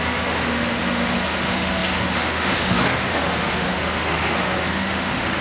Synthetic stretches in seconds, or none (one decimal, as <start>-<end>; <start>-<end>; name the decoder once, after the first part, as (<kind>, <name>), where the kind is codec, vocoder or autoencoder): 0.0-5.4 (autoencoder, DAC-VAE)